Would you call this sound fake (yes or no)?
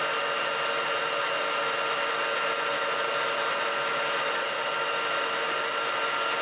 no